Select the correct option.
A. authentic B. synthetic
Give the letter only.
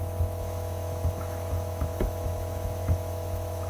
B